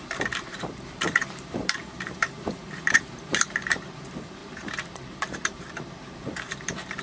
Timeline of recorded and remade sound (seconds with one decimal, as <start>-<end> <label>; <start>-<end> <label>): 0.0-7.0 remade